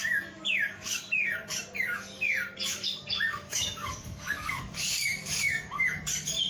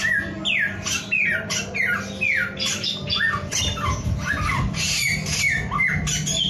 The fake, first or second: first